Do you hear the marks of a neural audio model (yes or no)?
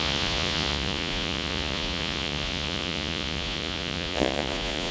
yes